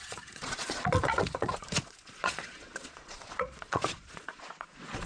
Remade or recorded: remade